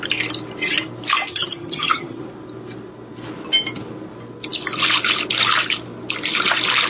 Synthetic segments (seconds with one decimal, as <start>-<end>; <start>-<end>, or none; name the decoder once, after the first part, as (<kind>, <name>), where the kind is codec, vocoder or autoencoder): 1.3-2.2 (vocoder, HiFi-GAN)